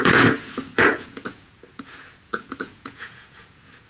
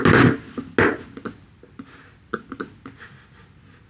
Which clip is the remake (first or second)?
first